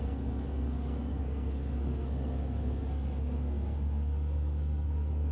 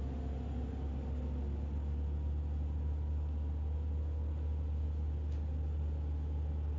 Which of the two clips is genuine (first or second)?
second